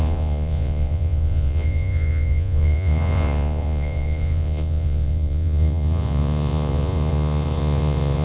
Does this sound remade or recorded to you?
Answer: remade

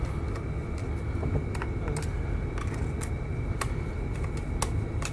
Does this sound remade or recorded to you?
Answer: recorded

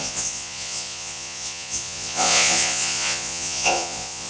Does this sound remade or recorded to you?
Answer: remade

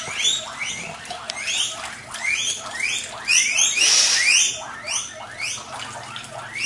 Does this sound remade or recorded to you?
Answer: recorded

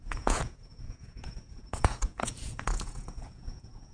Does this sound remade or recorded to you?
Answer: remade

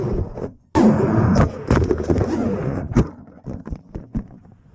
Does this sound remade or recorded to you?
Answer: remade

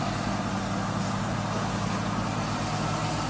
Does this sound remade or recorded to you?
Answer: recorded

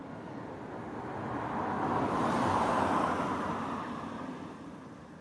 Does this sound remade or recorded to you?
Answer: recorded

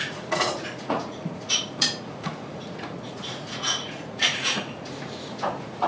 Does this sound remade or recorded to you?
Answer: remade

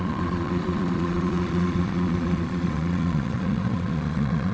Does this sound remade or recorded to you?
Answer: remade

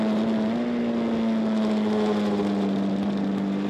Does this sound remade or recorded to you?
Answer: recorded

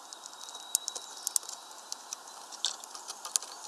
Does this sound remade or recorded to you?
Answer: recorded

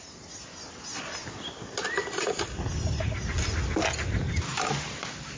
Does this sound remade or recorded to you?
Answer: recorded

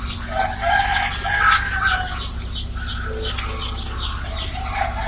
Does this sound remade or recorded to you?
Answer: recorded